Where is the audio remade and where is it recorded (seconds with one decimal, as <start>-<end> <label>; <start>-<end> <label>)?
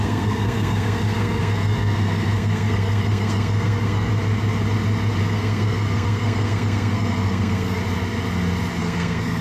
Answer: 0.0-4.1 remade; 4.1-5.2 recorded; 5.2-7.8 remade; 7.8-8.8 recorded; 8.8-9.4 remade